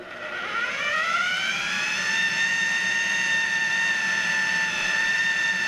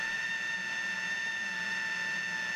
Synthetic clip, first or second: first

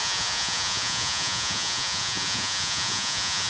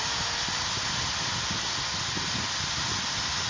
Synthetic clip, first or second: first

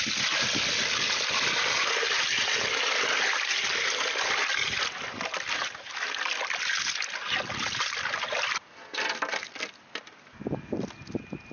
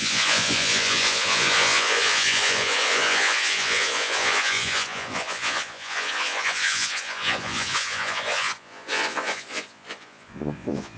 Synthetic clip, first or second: second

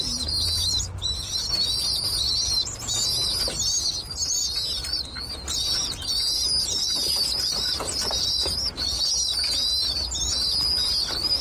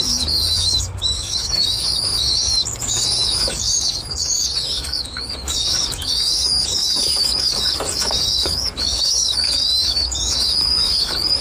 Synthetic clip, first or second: second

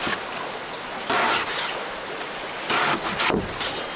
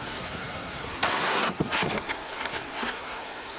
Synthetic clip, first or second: second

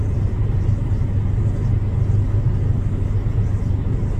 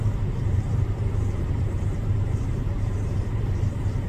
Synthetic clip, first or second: second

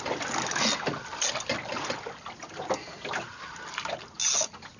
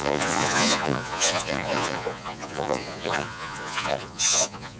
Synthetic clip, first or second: second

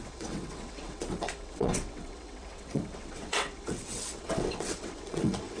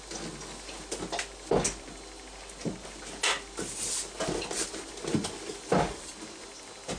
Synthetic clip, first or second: first